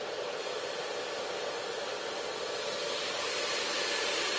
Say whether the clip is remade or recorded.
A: recorded